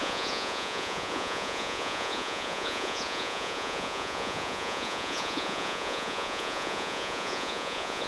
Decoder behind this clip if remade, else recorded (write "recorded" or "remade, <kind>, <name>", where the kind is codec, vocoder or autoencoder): remade, vocoder, Vocos